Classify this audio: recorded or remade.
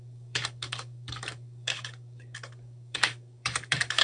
remade